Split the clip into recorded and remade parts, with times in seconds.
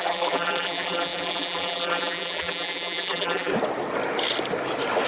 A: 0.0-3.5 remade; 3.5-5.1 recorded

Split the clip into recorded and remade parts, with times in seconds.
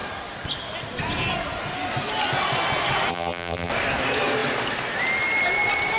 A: 0.0-3.1 recorded; 3.1-3.7 remade; 3.7-6.0 recorded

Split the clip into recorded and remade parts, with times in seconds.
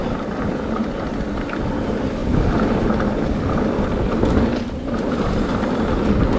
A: 0.0-1.7 remade; 1.7-2.2 recorded; 2.2-5.5 remade; 5.5-6.4 recorded